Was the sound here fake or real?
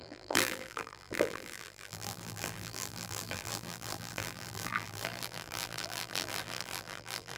fake